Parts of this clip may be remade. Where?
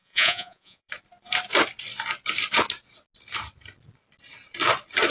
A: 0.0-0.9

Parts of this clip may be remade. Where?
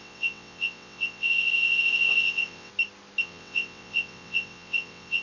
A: 0.0-2.7; 3.2-5.2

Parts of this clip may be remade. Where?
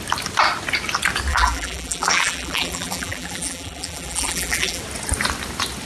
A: 1.3-4.8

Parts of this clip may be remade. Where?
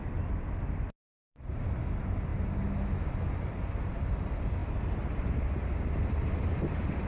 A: none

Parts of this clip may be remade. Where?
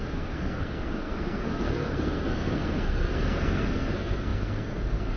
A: 0.0-5.2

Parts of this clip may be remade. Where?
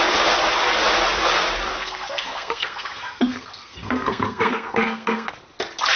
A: 1.7-5.3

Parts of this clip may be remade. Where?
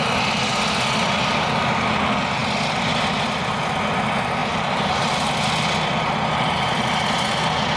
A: 4.4-5.3